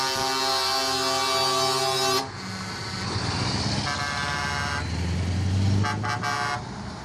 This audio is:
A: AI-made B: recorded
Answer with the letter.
B